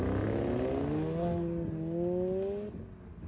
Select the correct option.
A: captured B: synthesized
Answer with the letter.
A